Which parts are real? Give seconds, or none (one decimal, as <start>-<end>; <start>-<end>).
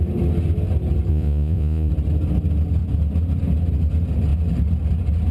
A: 0.0-1.1; 1.9-5.3